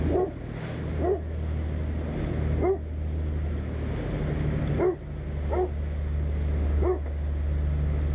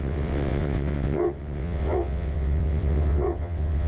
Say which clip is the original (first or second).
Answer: first